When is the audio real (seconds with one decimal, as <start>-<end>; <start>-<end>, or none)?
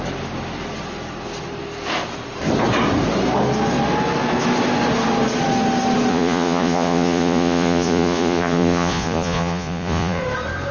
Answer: 0.0-6.1; 10.2-10.7